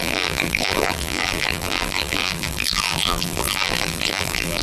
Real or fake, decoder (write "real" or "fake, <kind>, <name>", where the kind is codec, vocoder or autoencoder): fake, vocoder, BigVGAN v2